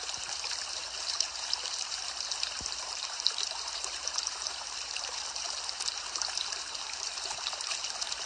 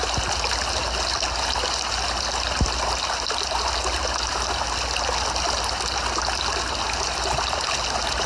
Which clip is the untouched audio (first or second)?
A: second